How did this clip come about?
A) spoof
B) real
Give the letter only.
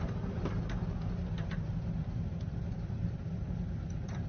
B